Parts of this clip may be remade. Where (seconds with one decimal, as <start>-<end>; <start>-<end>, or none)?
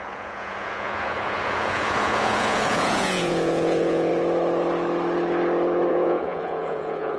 0.0-4.1; 5.9-7.2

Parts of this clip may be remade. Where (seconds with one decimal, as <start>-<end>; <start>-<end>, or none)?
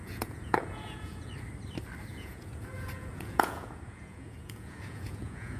0.0-1.3; 2.1-5.6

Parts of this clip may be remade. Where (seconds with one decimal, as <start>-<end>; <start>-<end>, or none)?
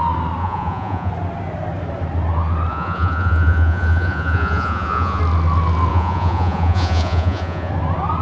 0.4-1.1; 2.7-5.2; 5.9-7.7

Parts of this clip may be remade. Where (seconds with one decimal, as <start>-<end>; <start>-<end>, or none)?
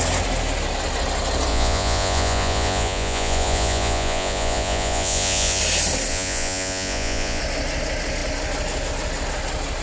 1.5-5.6; 6.1-7.4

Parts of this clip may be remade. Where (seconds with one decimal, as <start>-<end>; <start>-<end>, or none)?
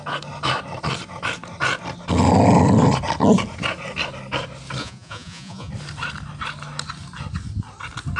4.8-5.7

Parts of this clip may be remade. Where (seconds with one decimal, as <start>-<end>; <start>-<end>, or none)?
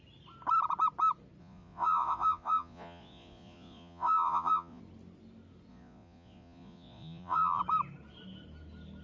1.4-4.8; 5.7-7.6